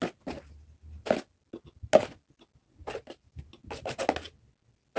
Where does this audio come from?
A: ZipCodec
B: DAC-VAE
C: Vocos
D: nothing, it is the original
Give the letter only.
D